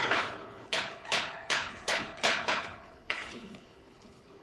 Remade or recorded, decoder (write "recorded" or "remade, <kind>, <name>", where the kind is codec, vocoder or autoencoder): remade, codec, HILCodec